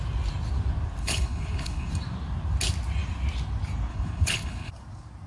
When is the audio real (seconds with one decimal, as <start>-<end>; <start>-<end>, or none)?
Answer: 0.0-1.0; 1.9-3.9; 4.7-5.3